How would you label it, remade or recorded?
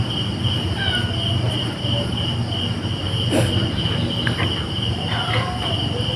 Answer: recorded